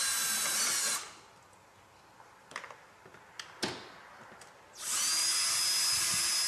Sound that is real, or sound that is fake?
real